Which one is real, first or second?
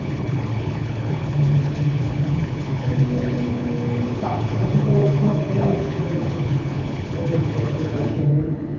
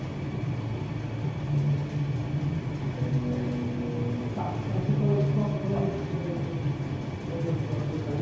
second